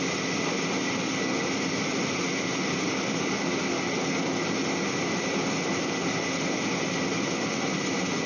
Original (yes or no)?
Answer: yes